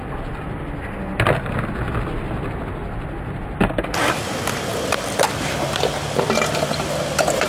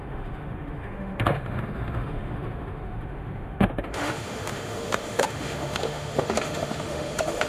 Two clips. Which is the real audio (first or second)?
first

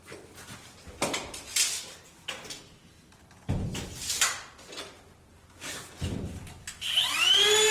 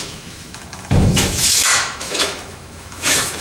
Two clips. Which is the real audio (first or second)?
first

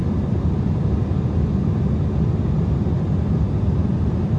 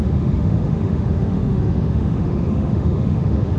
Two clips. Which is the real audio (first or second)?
first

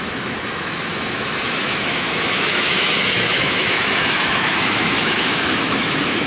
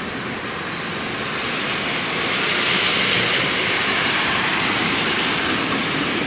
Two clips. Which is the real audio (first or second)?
second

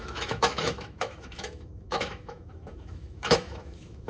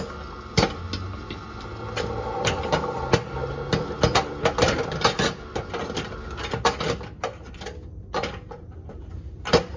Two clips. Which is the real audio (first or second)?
second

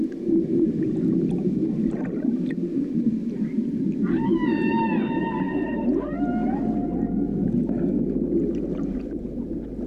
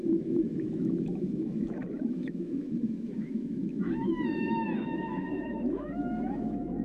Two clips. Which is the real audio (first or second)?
first